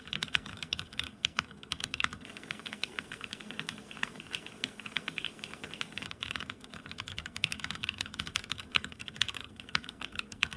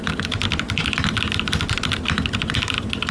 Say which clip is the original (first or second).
second